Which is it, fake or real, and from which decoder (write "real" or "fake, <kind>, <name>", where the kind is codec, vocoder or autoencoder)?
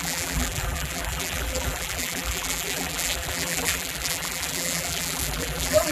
fake, vocoder, BigVGAN v2